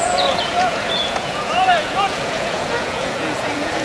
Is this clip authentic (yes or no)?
no